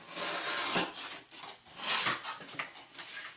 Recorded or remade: recorded